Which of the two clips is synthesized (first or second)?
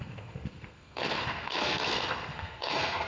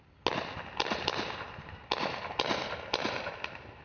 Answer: first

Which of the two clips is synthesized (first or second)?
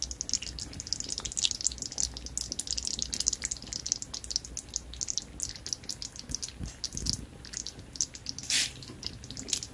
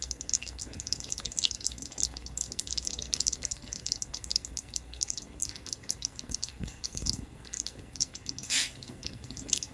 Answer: second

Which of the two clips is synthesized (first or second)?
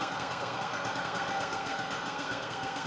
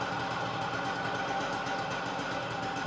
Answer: first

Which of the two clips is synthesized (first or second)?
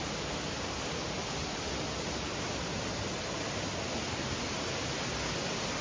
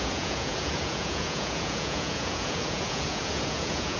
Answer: second